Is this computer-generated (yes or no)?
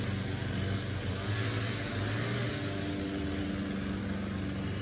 no